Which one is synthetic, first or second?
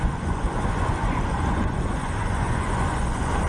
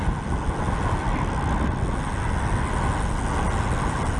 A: first